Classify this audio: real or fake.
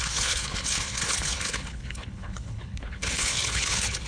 fake